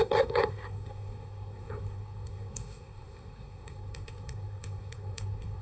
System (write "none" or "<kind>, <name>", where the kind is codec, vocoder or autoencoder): codec, SNAC